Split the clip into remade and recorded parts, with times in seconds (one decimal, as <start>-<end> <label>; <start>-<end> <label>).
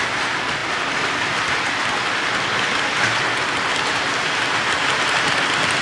0.0-5.8 recorded